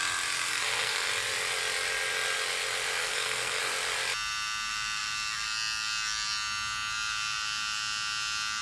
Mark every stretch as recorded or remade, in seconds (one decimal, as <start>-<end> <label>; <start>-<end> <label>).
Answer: 0.0-0.5 recorded; 0.5-1.1 remade; 1.1-3.0 recorded; 3.0-3.6 remade; 3.6-8.6 recorded